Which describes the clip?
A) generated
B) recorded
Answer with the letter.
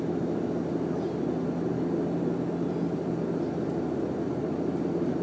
B